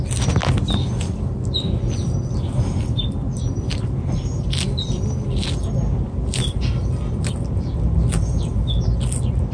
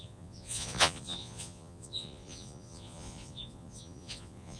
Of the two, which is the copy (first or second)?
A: second